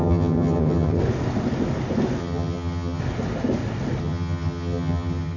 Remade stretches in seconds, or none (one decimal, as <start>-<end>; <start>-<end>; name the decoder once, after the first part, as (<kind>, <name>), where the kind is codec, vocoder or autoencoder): 0.0-1.0 (vocoder, HiFi-GAN); 2.2-3.0; 4.0-5.4

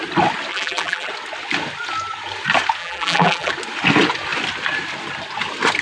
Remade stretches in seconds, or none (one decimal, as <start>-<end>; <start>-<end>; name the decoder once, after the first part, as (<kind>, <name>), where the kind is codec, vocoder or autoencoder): 0.5-1.1 (vocoder, BigVGAN v2); 2.8-3.5

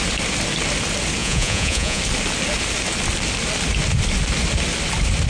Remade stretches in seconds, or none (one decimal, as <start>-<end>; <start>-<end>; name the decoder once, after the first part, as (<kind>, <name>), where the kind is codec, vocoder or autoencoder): 1.2-2.0 (vocoder, Vocos)